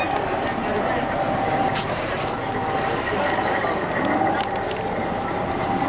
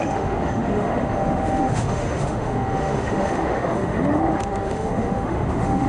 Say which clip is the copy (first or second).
second